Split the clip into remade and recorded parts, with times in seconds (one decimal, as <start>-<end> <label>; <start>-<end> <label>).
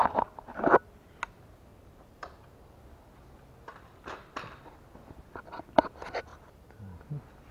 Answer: 0.0-1.7 recorded; 1.7-2.8 remade; 2.8-3.7 recorded; 3.7-4.6 remade; 4.6-6.3 recorded; 6.3-7.0 remade; 7.0-7.5 recorded